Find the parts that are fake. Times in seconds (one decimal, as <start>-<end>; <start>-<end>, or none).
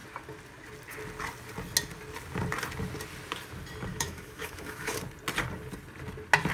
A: 3.9-5.0